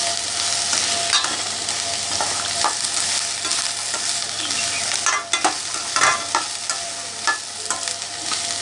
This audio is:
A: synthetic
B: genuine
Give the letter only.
B